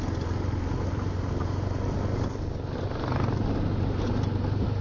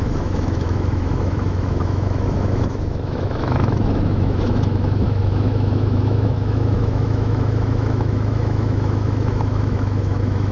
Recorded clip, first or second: first